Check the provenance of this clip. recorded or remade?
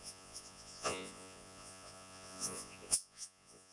remade